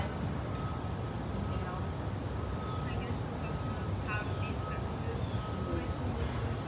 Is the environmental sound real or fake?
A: real